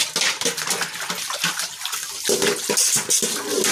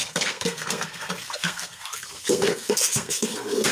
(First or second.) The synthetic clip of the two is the second